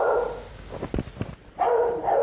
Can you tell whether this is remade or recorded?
remade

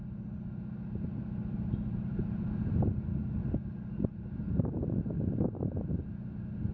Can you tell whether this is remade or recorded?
recorded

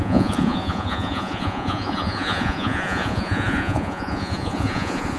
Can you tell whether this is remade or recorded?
remade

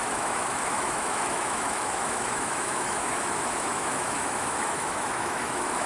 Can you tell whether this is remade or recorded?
remade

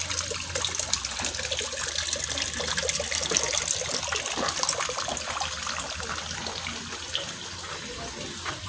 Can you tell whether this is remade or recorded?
recorded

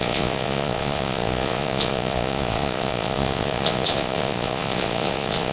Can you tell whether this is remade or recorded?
remade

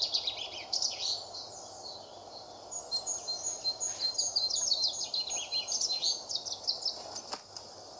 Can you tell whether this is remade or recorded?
recorded